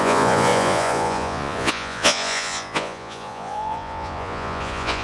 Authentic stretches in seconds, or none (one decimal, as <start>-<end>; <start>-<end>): none